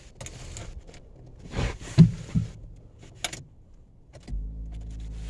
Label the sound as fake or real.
real